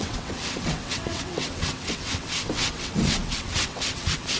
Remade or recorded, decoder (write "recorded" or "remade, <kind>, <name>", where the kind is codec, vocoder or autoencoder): remade, vocoder, WaveNeXt